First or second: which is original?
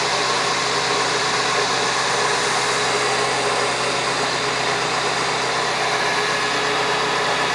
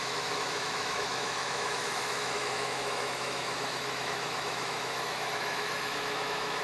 first